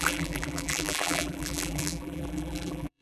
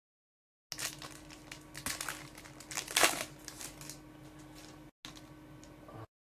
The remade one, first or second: first